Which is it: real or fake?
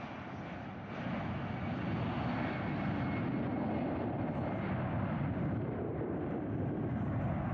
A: real